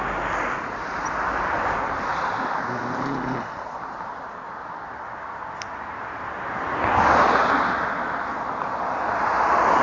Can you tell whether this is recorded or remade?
recorded